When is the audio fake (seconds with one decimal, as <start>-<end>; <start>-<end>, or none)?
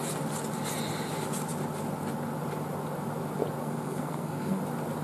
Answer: 3.6-4.6